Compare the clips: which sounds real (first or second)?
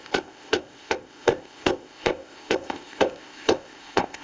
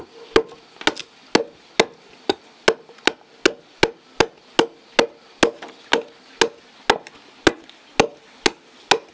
second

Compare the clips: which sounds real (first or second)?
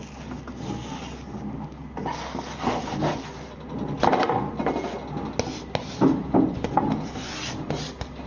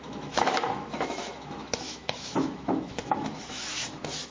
first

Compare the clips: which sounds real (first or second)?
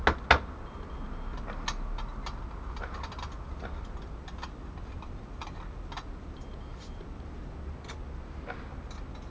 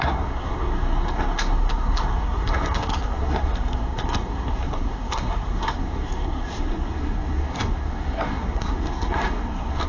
first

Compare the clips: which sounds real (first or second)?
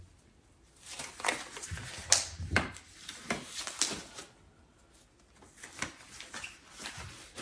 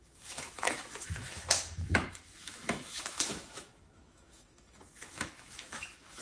first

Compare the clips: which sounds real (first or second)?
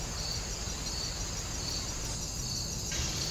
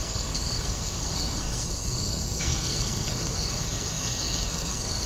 first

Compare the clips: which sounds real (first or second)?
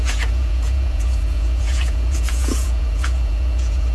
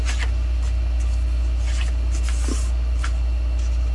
second